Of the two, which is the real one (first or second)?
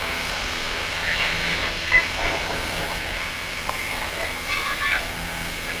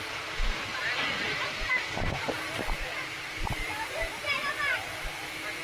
second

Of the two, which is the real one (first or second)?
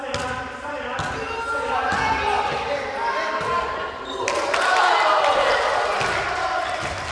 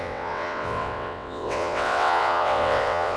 first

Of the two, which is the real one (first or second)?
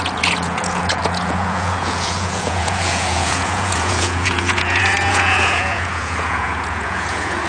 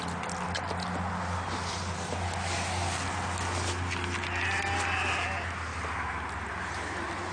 second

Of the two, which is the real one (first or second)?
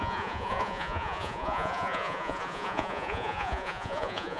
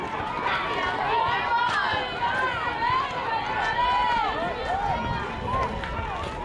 second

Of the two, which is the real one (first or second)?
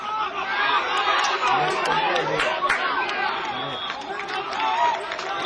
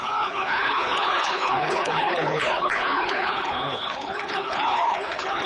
first